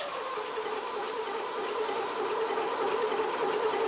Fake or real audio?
fake